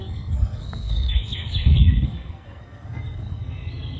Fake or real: fake